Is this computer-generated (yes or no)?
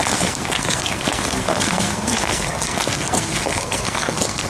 yes